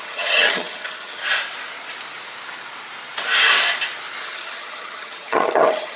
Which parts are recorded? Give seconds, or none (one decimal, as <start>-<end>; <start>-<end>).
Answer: 1.2-4.2